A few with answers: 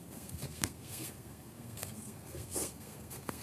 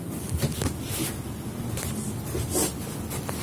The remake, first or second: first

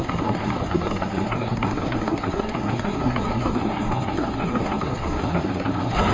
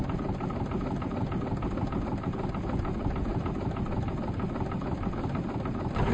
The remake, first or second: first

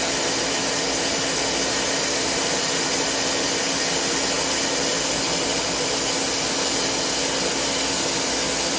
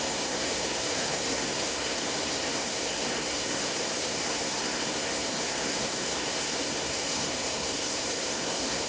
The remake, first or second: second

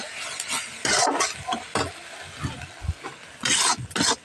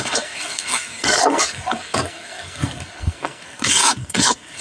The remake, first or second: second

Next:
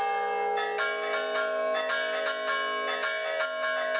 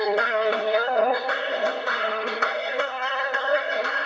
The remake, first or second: second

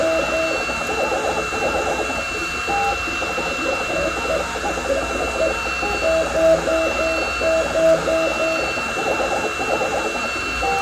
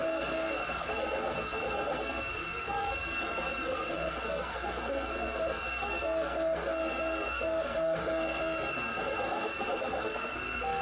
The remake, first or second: second